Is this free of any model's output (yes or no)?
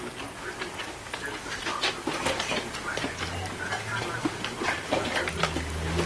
yes